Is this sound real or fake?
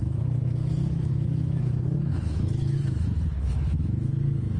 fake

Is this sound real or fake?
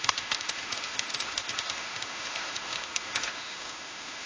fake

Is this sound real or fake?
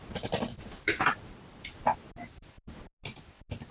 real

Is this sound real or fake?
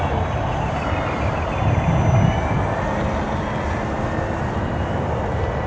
real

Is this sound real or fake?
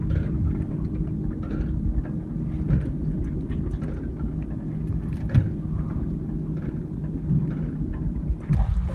real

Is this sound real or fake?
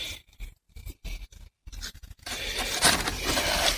real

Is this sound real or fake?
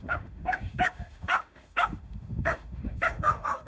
fake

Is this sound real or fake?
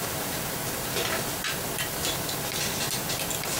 real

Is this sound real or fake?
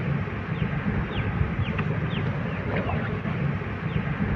real